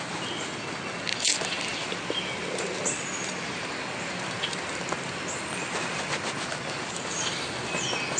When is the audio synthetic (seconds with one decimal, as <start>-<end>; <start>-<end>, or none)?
none